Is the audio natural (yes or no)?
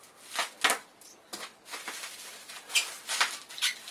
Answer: yes